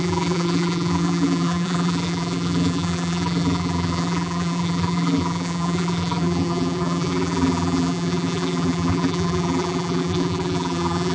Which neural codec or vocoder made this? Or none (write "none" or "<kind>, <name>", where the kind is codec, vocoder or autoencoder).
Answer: vocoder, BigVGAN v2